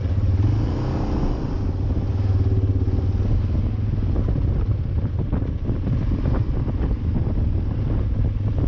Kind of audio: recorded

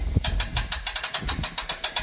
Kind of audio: remade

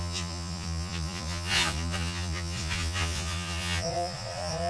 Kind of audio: remade